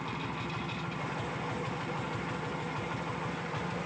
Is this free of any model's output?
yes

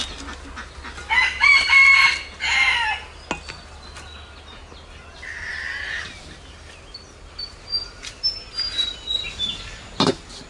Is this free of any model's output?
yes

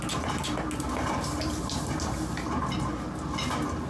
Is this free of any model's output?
yes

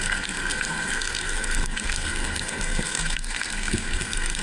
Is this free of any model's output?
no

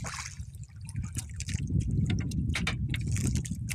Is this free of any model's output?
yes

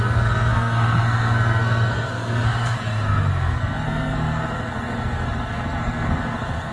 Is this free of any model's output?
no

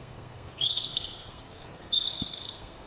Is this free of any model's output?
no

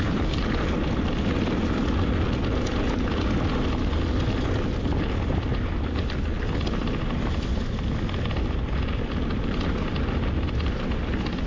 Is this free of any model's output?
yes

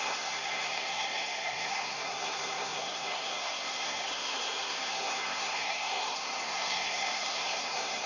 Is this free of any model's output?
no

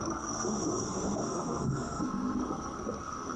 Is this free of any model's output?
no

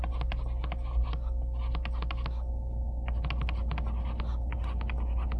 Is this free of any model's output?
yes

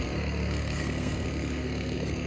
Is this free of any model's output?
no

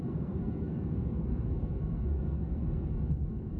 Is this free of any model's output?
no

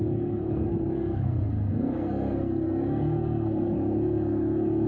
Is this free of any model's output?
no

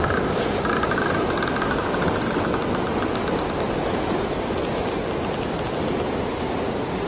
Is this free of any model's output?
yes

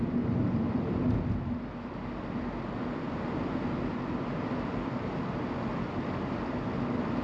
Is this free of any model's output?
yes